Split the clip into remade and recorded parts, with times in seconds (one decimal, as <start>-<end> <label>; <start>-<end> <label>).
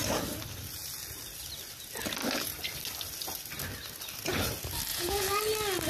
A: 0.0-4.9 recorded; 4.9-5.4 remade; 5.4-5.9 recorded